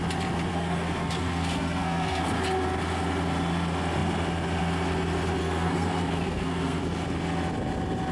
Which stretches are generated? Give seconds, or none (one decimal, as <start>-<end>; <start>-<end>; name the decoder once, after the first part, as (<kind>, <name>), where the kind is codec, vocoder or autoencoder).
0.5-2.2 (codec, SNAC); 5.4-6.8

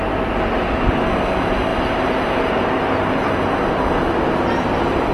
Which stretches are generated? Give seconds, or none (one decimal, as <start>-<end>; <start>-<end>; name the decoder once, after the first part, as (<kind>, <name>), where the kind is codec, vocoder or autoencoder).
none

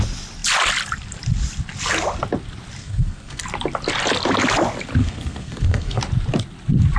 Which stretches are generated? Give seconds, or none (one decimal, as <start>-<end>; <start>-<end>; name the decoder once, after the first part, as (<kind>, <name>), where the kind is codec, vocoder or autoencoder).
2.8-3.4 (codec, SNAC); 5.0-6.0

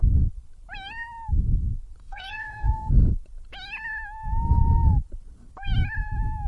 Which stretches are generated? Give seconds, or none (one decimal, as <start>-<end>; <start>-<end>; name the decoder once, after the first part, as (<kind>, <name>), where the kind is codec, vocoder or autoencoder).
2.0-2.9 (codec, SNAC)

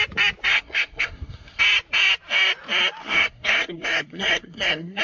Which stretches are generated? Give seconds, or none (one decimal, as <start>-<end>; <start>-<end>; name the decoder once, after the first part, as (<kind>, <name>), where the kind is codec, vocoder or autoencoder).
0.5-1.6 (codec, SNAC); 3.0-5.0